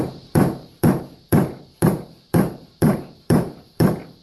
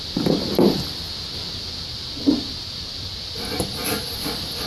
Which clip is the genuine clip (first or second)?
second